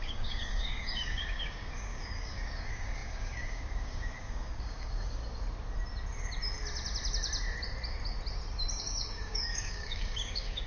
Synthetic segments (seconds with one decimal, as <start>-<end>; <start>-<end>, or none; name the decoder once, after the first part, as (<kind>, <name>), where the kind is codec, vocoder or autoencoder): 0.0-5.2 (codec, DAC); 8.8-10.7